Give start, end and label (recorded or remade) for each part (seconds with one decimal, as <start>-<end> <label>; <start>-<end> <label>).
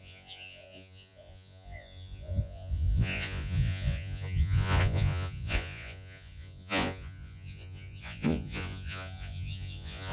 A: 0.0-10.1 remade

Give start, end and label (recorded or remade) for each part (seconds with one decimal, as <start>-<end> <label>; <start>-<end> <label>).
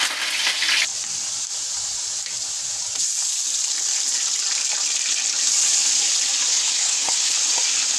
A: 0.0-6.5 recorded; 6.5-7.3 remade; 7.3-8.0 recorded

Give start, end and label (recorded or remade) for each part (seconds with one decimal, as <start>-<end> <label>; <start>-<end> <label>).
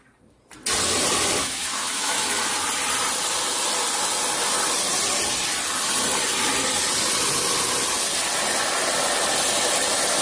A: 0.0-1.4 recorded; 1.4-2.3 remade; 2.3-10.2 recorded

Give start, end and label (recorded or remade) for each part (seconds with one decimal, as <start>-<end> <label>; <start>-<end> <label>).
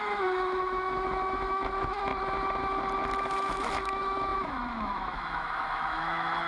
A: 0.0-2.1 remade; 2.1-3.2 recorded; 3.2-6.5 remade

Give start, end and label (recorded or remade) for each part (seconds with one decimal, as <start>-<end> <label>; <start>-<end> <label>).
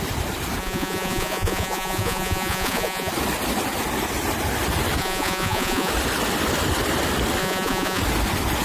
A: 0.0-0.6 recorded; 0.6-3.1 remade; 3.1-5.0 recorded; 5.0-5.9 remade; 5.9-7.4 recorded; 7.4-8.0 remade; 8.0-8.6 recorded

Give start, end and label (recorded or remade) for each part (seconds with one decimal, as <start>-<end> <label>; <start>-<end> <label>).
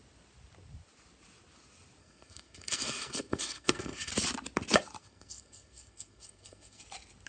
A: 0.0-2.0 recorded; 2.0-4.1 remade; 4.1-5.0 recorded; 5.0-6.8 remade; 6.8-7.3 recorded